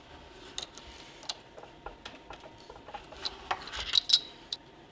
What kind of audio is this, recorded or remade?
recorded